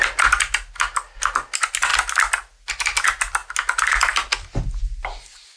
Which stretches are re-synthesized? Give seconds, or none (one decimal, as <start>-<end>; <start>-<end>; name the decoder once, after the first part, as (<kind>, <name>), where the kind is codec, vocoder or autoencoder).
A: none